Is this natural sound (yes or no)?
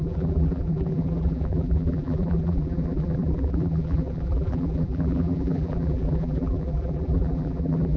no